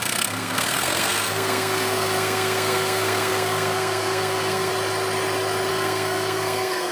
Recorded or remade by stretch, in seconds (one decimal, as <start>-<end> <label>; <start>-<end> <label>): 0.0-4.7 remade; 4.7-5.7 recorded; 5.7-6.9 remade